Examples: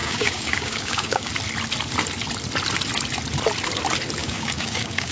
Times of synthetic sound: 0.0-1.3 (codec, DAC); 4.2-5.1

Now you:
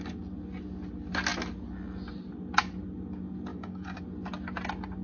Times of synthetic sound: 3.5-4.0 (codec, DAC)

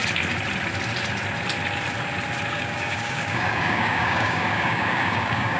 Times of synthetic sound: 2.5-5.6 (codec, DAC)

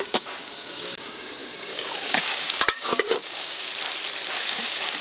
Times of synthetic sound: 0.0-3.7 (codec, DAC); 4.4-5.0

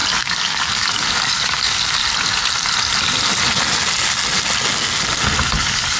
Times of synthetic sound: 0.0-2.0 (codec, DAC); 5.6-6.0

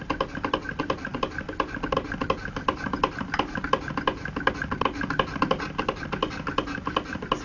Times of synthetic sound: none

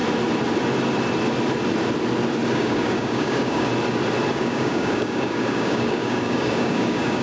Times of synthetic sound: 2.5-3.7 (codec, DAC); 4.3-7.2

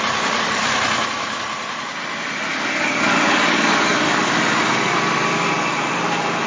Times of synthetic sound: 2.5-4.4 (codec, DAC)